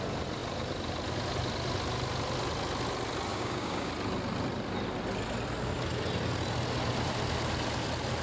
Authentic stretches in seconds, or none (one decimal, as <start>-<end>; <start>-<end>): 0.0-3.3; 3.9-8.2